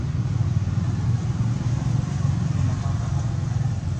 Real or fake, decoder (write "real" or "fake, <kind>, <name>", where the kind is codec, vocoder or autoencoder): real